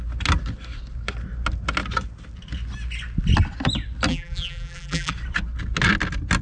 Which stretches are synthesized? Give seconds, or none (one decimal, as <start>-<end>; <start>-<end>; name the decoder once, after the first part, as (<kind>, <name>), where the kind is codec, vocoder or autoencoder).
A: 4.1-5.1 (vocoder, BigVGAN v2)